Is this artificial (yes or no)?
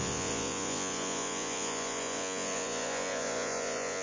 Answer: yes